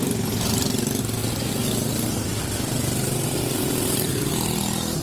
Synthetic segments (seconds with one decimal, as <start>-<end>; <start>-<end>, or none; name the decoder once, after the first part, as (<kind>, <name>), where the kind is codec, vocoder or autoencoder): none

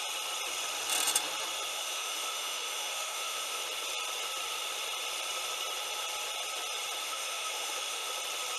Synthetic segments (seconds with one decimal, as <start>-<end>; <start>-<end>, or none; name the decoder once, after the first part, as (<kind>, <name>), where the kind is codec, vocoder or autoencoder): 1.7-3.6 (autoencoder, DAC-VAE); 7.0-8.1

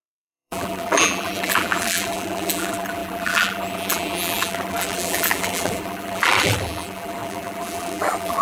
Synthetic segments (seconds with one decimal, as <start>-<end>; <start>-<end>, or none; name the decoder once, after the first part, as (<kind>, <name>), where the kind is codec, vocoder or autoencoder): 0.0-8.4 (vocoder, BigVGAN v2)

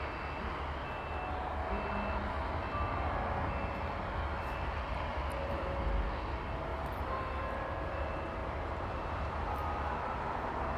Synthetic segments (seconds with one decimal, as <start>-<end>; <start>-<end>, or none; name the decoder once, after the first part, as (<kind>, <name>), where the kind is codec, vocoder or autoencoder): 5.1-5.9 (vocoder, BigVGAN v2); 6.7-7.2; 8.4-9.9